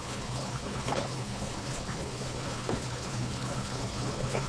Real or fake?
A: fake